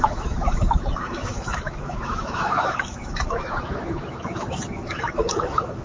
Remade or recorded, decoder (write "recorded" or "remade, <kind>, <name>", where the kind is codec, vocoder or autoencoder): remade, autoencoder, DAC-VAE